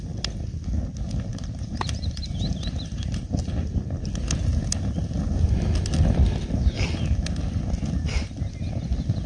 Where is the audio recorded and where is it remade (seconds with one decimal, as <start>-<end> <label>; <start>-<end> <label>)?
0.0-1.3 recorded; 1.3-3.3 remade; 3.3-9.3 recorded